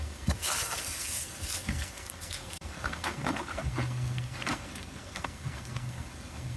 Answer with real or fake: fake